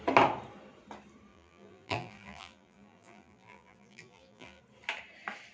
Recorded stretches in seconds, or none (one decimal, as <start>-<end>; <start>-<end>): 0.0-1.3; 4.6-5.5